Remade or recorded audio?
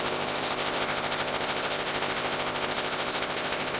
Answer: remade